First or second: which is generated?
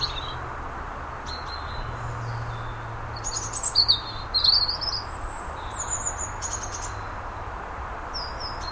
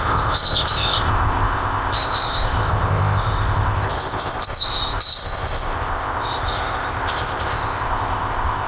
second